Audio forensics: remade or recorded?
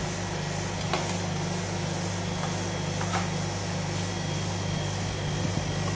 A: recorded